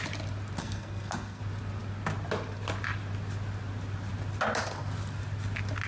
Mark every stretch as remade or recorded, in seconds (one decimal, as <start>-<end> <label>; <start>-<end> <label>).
0.0-0.6 recorded; 0.6-1.4 remade; 1.4-5.9 recorded